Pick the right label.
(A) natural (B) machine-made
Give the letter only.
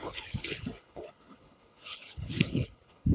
B